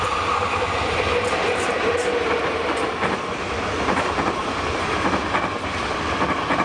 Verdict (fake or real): real